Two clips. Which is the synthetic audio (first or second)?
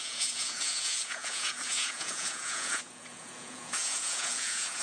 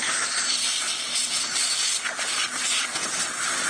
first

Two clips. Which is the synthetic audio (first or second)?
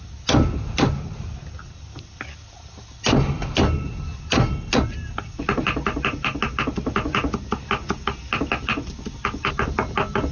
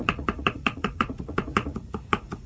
second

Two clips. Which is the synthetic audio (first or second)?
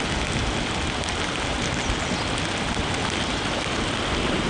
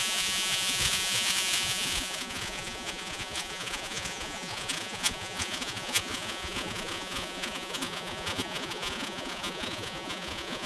second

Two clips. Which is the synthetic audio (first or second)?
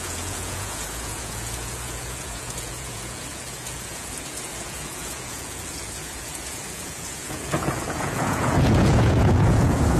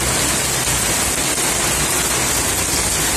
first